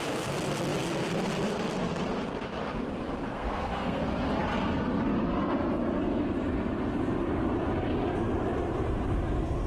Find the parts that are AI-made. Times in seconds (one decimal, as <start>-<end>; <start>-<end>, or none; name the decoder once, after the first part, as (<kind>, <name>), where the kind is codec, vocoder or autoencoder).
3.3-4.0 (codec, SNAC)